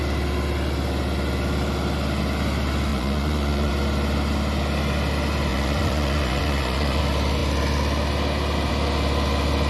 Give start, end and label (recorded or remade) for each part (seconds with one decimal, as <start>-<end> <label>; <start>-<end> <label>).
0.0-2.9 recorded; 2.9-3.7 remade; 3.7-5.5 recorded; 5.5-7.0 remade; 7.0-9.7 recorded